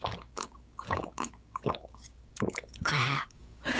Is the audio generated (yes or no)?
yes